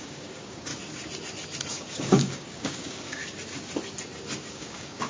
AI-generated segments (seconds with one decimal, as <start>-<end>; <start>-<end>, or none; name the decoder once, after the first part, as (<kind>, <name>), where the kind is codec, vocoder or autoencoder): 0.0-0.7 (codec, DAC); 1.7-3.2; 4.5-5.1